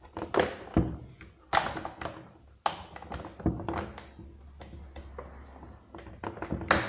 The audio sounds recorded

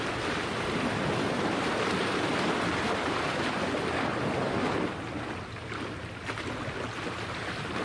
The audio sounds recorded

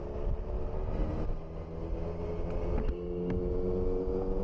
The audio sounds recorded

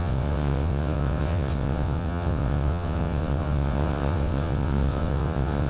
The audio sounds remade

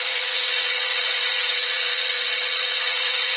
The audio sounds remade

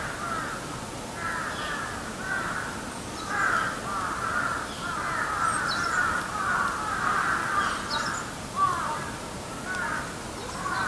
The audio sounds recorded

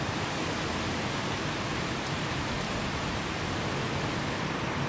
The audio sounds recorded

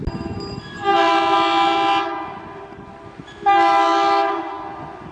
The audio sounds recorded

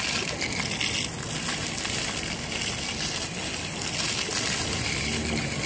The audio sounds recorded